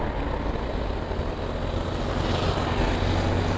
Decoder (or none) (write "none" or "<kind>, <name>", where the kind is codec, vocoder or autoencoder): none